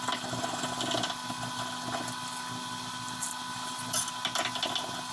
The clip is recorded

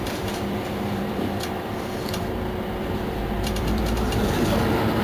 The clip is remade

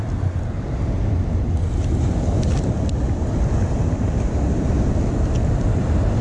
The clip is recorded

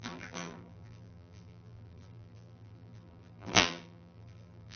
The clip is remade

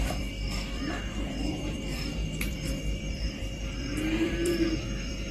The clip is remade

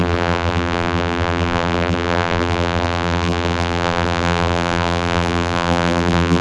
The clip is remade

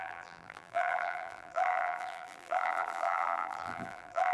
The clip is remade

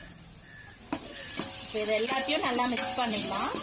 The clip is remade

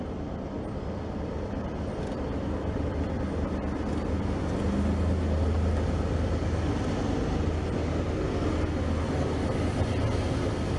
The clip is recorded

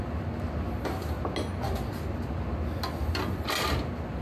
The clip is recorded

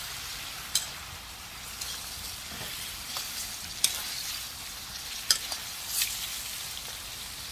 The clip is remade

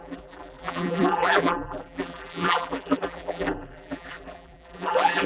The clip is remade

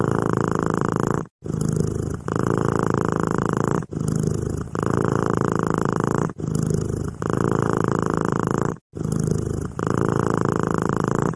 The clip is recorded